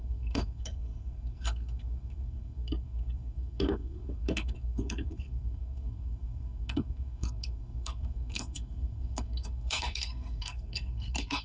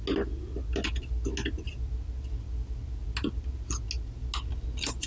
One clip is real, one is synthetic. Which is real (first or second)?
second